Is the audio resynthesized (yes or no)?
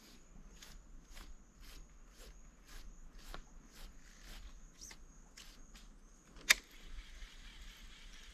no